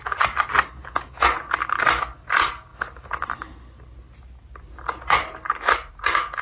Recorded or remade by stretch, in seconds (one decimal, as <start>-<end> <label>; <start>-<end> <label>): 0.0-6.4 recorded